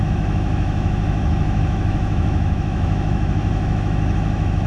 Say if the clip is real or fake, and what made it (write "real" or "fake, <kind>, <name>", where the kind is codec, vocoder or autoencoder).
fake, autoencoder, DAC-VAE